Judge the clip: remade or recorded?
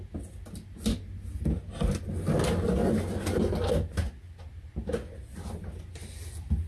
recorded